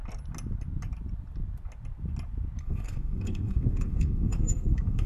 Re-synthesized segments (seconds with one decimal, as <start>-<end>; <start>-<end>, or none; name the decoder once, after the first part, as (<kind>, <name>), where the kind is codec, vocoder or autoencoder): 2.6-5.1 (codec, SNAC)

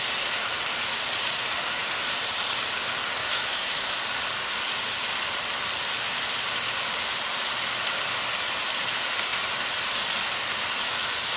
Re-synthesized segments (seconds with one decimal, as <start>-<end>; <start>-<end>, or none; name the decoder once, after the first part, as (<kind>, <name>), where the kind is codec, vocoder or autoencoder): 3.2-4.0 (autoencoder, DAC-VAE)

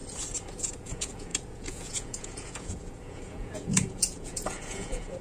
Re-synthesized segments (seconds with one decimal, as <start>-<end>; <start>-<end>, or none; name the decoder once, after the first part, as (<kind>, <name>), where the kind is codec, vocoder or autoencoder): 0.5-5.2 (vocoder, Vocos)